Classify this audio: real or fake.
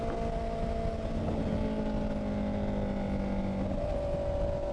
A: real